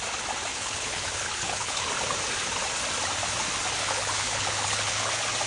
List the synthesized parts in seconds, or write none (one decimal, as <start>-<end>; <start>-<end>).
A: 0.5-1.9; 3.8-5.1

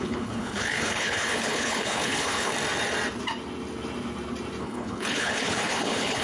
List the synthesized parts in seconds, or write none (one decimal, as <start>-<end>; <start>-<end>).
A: 0.0-2.5; 4.6-6.2

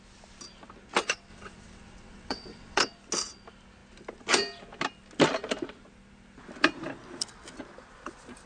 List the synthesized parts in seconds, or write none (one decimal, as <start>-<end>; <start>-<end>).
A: 1.3-2.8

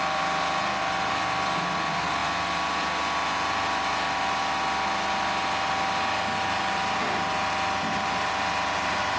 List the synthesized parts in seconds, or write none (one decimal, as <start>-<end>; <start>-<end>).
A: none